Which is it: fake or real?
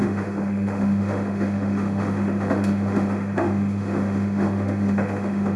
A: fake